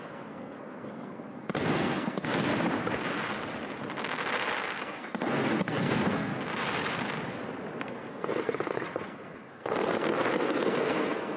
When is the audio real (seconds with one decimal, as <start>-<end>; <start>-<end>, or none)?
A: 2.5-4.8; 6.3-7.8

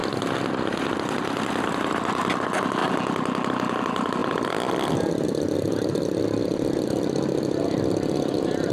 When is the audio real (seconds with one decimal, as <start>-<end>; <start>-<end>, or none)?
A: 0.0-8.7

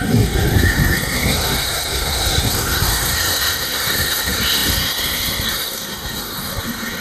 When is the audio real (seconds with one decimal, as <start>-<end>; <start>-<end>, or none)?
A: none

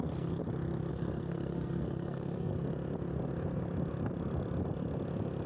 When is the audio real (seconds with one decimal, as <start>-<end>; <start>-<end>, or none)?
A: 0.4-0.9; 2.5-5.5

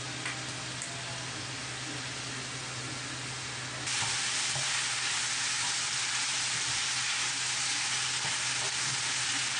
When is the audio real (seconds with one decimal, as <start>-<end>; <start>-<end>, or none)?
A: 0.0-9.6